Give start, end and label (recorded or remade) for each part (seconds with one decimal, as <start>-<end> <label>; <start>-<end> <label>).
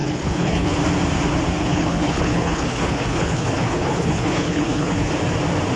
0.0-0.8 remade; 0.8-1.6 recorded; 1.6-5.1 remade; 5.1-5.8 recorded